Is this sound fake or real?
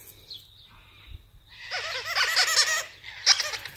real